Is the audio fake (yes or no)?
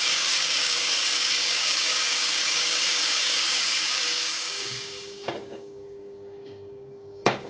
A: yes